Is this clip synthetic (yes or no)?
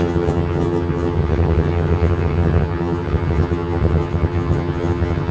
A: yes